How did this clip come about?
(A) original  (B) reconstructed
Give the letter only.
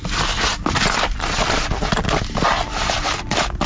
A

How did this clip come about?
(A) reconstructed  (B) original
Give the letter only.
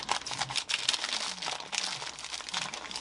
B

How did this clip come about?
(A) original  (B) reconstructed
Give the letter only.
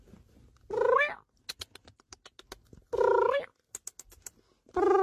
A